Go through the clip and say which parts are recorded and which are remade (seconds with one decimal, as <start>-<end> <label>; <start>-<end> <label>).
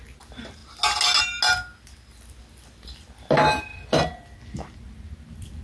0.0-5.6 recorded